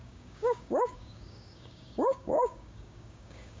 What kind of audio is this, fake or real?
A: fake